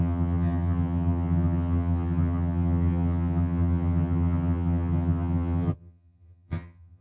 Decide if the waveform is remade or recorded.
remade